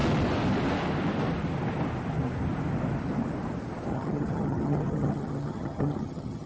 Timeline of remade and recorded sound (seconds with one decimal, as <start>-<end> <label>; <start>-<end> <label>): 0.0-3.9 recorded; 3.9-6.5 remade